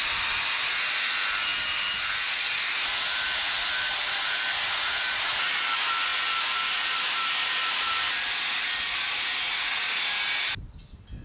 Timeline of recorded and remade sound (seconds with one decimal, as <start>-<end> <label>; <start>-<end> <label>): 0.0-11.2 recorded